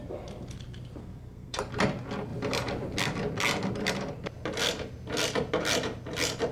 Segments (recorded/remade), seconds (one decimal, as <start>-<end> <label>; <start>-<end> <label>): 0.0-1.0 recorded; 1.0-1.6 remade; 1.6-6.5 recorded